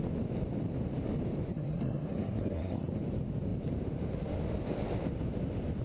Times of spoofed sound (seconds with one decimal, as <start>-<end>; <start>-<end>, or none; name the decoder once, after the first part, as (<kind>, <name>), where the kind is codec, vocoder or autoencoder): 1.5-2.9 (codec, SNAC)